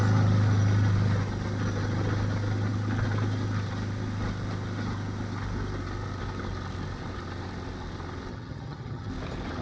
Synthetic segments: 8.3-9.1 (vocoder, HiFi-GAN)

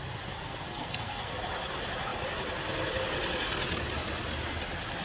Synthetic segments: 0.4-1.4 (codec, SNAC)

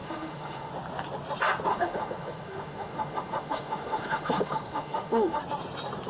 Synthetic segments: 0.0-0.7 (autoencoder, DAC-VAE); 1.7-5.4

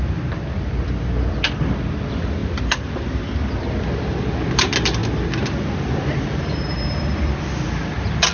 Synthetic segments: none

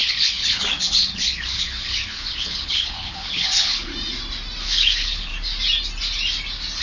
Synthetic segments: 0.0-3.9 (codec, HILCodec); 4.6-5.3

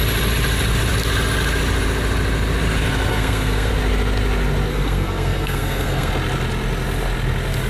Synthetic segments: 3.1-3.7 (codec, SNAC); 4.7-6.1

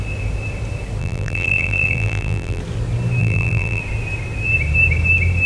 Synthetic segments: 1.0-2.6 (vocoder, BigVGAN v2); 3.2-3.8